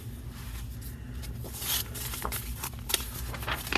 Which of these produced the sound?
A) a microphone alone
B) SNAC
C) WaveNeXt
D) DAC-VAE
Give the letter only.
A